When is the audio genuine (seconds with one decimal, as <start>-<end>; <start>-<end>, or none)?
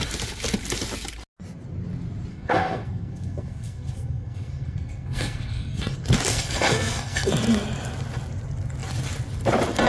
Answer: 0.0-2.3; 5.8-6.3; 7.3-9.9